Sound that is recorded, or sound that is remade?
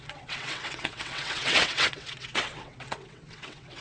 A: remade